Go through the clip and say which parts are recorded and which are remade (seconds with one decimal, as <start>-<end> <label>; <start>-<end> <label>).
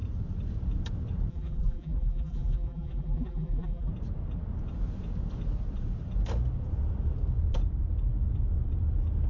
0.0-1.3 recorded; 1.3-3.9 remade; 3.9-9.3 recorded